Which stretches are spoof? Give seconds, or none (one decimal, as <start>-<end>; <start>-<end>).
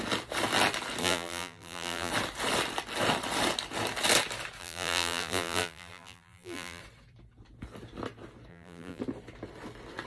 1.0-2.1; 4.6-6.8; 8.5-9.0